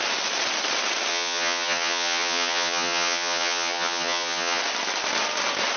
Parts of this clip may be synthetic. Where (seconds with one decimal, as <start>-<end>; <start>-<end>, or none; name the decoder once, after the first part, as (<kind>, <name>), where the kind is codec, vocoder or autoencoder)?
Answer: 1.1-4.6 (vocoder, HiFi-GAN)

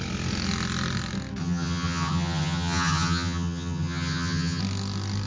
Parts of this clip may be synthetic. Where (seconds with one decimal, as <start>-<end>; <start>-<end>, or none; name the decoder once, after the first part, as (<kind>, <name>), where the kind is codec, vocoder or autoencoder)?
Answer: 1.4-4.6 (vocoder, HiFi-GAN)

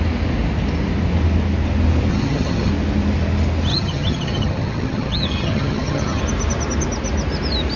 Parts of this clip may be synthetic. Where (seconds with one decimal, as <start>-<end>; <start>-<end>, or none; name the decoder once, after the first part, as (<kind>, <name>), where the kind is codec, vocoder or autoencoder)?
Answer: 2.1-2.7 (vocoder, HiFi-GAN); 3.7-6.2

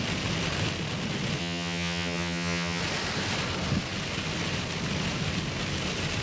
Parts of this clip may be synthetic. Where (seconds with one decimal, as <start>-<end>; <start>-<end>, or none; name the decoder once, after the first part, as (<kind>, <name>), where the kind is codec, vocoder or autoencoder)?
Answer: 1.4-2.8 (vocoder, HiFi-GAN)

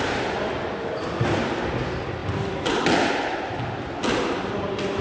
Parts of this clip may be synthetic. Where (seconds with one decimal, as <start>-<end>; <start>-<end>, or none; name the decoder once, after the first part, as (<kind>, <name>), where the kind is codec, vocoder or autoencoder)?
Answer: none